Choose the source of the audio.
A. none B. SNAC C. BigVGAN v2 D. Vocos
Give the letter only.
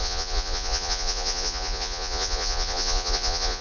D